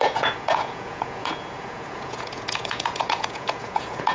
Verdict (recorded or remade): remade